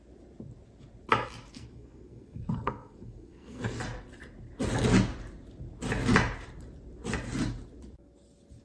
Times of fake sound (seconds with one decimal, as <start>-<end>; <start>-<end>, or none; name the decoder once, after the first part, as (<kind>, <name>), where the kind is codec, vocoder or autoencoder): 1.5-3.8 (codec, SNAC)